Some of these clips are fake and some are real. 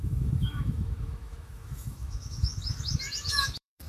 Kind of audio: fake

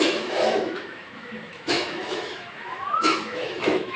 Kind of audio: fake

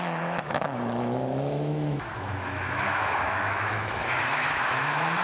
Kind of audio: fake